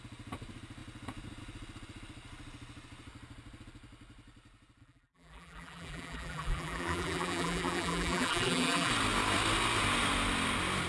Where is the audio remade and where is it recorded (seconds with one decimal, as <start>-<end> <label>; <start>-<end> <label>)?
0.0-4.8 recorded; 4.8-8.9 remade; 8.9-10.9 recorded